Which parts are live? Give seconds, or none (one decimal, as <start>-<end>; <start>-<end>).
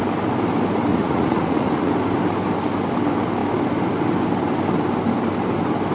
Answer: 0.0-0.9; 1.9-5.9